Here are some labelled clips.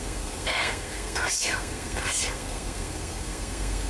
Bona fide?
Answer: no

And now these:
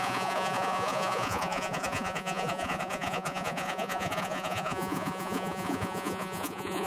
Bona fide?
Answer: no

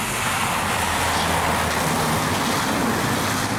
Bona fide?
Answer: yes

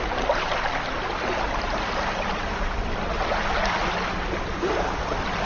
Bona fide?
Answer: yes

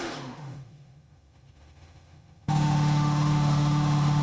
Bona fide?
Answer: no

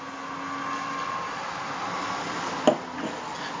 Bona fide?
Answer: yes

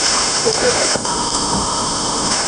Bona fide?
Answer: no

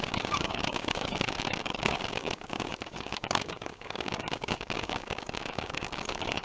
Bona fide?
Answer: no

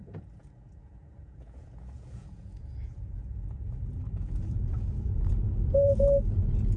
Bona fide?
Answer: no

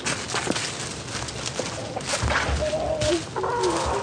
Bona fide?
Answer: yes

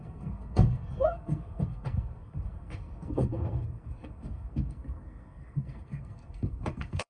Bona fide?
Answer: no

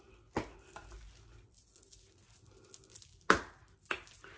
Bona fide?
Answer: yes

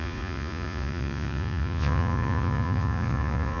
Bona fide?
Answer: no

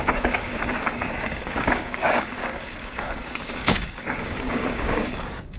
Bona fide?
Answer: no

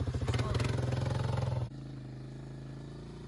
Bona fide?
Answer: yes